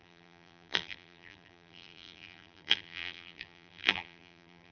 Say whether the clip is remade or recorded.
remade